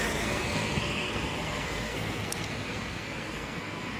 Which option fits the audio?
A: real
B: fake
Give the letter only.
B